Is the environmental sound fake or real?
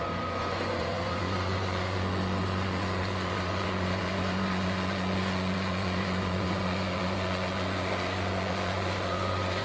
fake